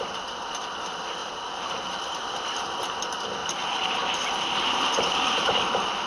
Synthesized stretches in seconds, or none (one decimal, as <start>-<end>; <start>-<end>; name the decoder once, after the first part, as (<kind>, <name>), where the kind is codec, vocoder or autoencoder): 1.2-2.3 (vocoder, BigVGAN v2); 3.4-6.1